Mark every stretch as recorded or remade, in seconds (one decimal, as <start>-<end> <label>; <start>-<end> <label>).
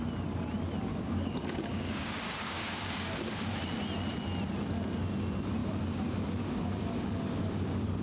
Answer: 0.0-0.9 recorded; 0.9-3.1 remade; 3.1-8.0 recorded